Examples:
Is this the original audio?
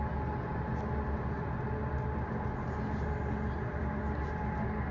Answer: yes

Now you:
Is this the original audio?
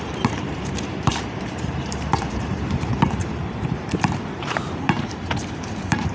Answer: no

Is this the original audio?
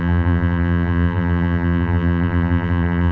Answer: no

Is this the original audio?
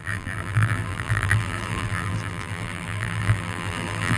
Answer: no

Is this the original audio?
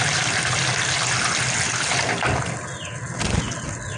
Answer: yes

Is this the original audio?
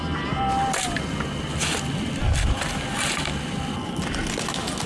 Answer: yes